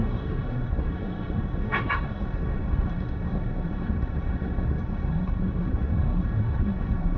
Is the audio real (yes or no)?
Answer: no